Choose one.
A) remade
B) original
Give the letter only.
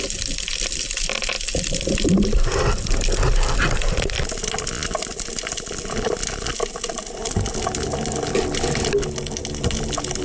B